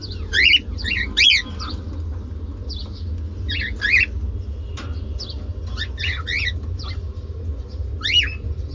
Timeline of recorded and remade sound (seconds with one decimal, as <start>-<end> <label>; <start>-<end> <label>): 0.0-8.7 recorded